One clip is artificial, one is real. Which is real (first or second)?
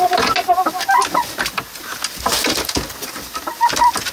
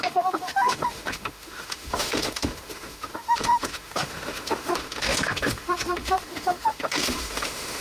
first